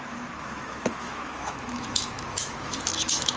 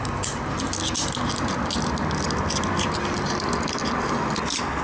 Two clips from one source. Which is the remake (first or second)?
first